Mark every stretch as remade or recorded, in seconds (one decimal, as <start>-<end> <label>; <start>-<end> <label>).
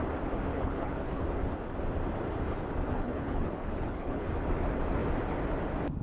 0.0-0.5 recorded; 0.5-1.2 remade; 1.2-2.9 recorded; 2.9-4.3 remade; 4.3-6.0 recorded